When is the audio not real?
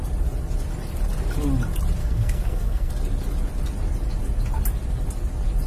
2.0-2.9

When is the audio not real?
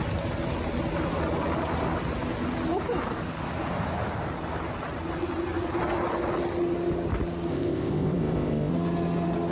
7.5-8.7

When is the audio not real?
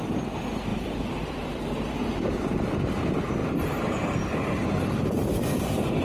0.7-1.9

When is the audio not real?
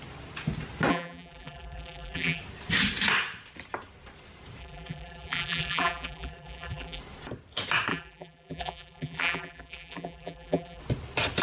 0.9-2.4; 4.6-7.0; 7.9-10.8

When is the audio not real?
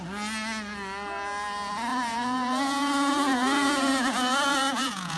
1.9-5.2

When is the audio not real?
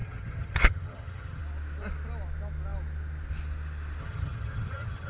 0.0-1.4; 4.0-5.1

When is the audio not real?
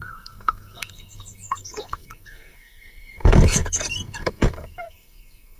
0.0-5.6